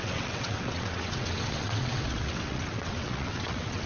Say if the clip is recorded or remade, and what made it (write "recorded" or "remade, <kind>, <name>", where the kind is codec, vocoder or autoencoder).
remade, vocoder, WaveNeXt